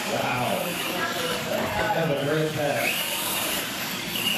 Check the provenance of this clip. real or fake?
fake